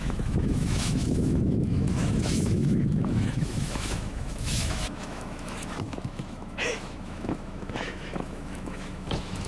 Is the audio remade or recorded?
remade